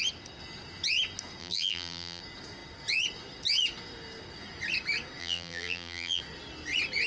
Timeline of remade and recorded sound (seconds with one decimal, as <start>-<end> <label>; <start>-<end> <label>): 0.0-1.4 recorded; 1.4-2.2 remade; 2.2-5.2 recorded; 5.2-6.2 remade; 6.2-7.1 recorded